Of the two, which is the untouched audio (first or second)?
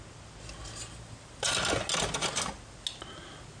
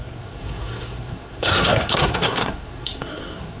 first